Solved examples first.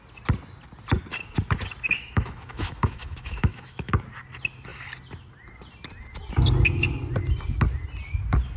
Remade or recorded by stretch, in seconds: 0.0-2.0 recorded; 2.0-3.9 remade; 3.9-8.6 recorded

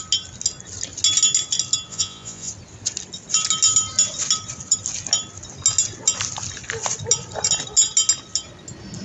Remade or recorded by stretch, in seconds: 0.0-1.9 recorded; 1.9-2.5 remade; 2.5-9.0 recorded

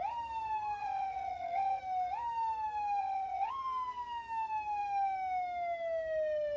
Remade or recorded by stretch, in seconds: 0.0-0.8 recorded; 0.8-1.8 remade; 1.8-3.0 recorded; 3.0-3.5 remade; 3.5-6.6 recorded

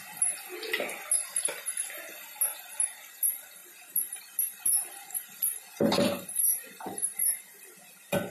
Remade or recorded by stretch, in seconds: 0.0-3.6 recorded; 3.6-4.3 remade; 4.3-5.7 recorded; 5.7-7.7 remade; 7.7-8.3 recorded

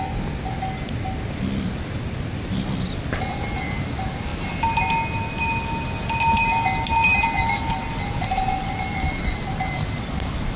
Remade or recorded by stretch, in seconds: 0.0-10.6 recorded

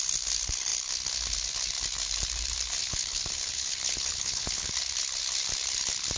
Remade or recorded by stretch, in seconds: 0.0-2.8 recorded; 2.8-4.7 remade; 4.7-6.2 recorded